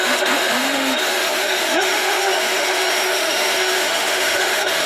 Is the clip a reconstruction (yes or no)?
yes